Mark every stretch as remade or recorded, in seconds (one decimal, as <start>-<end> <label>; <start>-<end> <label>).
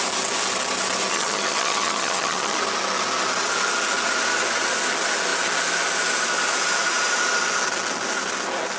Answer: 0.0-1.1 recorded; 1.1-2.6 remade; 2.6-8.8 recorded